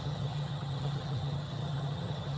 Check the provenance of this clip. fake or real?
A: fake